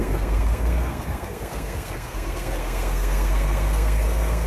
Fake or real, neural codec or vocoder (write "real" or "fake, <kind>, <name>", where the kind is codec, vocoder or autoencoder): fake, codec, SNAC